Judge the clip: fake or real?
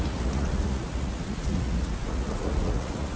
fake